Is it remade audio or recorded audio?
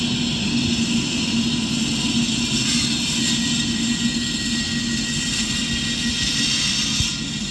recorded